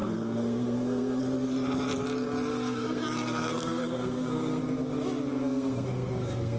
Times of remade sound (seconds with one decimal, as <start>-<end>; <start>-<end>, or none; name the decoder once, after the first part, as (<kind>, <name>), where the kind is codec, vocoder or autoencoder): 0.0-1.2 (codec, SNAC); 2.5-4.6; 5.3-6.6